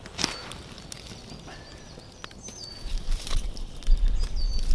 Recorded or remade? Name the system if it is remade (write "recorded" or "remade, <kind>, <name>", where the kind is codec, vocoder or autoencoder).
recorded